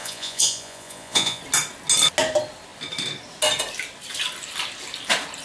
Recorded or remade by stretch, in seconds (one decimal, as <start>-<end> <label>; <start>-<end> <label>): 0.0-1.4 remade; 1.4-5.4 recorded